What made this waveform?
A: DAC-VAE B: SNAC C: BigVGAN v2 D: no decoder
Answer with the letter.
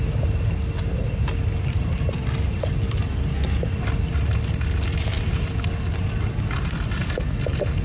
D